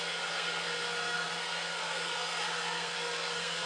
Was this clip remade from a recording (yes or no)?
yes